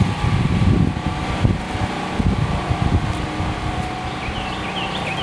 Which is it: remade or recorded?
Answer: recorded